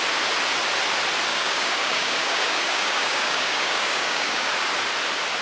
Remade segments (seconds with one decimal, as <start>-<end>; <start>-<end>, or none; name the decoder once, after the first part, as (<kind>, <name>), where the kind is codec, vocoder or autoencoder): 1.3-4.5 (codec, DAC)